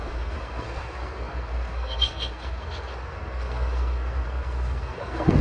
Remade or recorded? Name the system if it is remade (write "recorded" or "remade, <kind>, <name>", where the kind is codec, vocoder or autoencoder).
remade, codec, SNAC